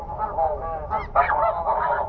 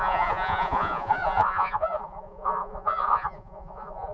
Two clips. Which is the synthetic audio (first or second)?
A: second